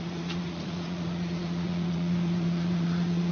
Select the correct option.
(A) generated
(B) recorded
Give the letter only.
A